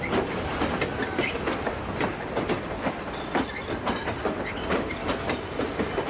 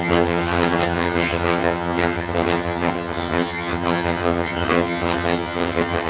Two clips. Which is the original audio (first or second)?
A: first